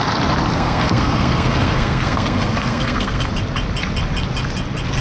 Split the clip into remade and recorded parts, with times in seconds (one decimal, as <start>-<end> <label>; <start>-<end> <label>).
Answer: 0.0-0.5 recorded; 0.5-3.3 remade; 3.3-5.0 recorded